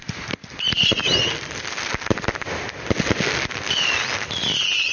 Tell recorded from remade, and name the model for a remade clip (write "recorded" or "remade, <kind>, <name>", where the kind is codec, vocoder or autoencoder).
recorded